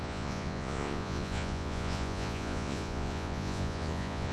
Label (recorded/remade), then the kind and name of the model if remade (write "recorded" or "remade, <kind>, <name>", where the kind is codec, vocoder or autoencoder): remade, vocoder, Vocos